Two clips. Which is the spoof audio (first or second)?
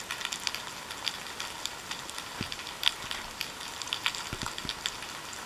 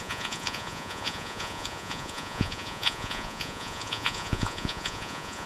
second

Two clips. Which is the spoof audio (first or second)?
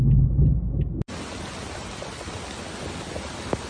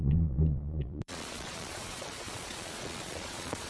second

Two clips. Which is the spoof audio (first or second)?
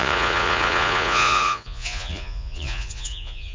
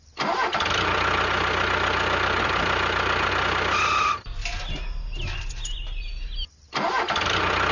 first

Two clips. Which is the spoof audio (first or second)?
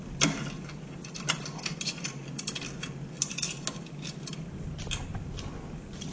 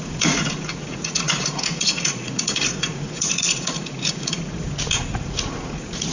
second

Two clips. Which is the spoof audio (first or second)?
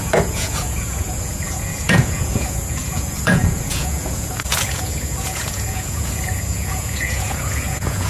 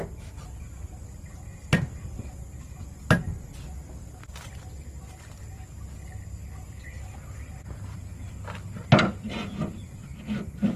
first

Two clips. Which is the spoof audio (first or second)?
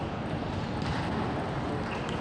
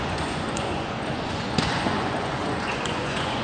second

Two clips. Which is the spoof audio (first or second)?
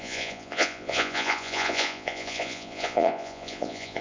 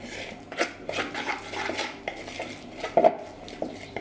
first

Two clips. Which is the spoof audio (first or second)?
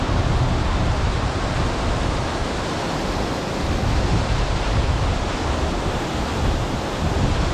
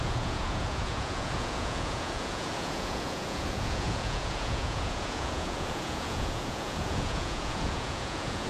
second